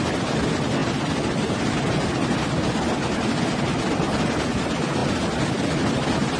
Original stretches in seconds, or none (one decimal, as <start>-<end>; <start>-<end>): 0.0-6.4